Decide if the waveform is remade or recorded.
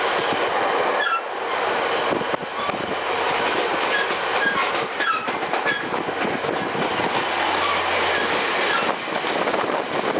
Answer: recorded